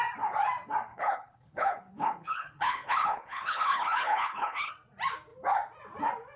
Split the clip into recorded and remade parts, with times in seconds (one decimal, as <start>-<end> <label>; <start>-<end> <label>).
0.0-0.9 recorded; 0.9-4.7 remade; 4.7-6.4 recorded